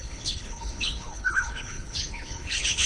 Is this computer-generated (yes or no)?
yes